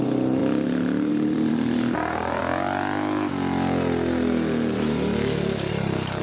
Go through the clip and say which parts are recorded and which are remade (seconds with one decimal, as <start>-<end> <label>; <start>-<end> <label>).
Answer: 0.0-0.4 remade; 0.4-1.1 recorded; 1.1-2.4 remade; 2.4-5.7 recorded; 5.7-6.2 remade